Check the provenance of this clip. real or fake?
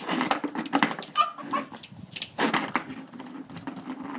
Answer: real